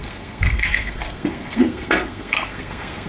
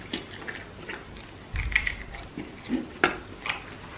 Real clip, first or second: second